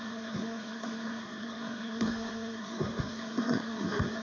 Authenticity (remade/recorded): remade